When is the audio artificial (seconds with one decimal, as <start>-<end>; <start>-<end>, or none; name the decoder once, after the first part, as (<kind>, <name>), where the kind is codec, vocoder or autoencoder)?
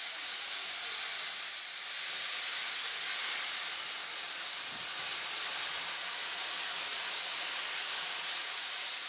0.0-0.6 (vocoder, Vocos); 5.7-9.1